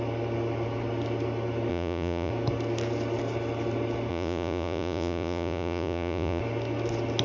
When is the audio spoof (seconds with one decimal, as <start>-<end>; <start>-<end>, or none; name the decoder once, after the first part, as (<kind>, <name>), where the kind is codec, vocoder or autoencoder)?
1.7-2.3 (vocoder, Vocos); 4.1-6.4